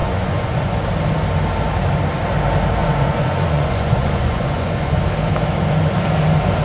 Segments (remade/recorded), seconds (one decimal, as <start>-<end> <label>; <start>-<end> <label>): 0.0-0.8 remade; 0.8-2.8 recorded; 2.8-5.0 remade; 5.0-6.6 recorded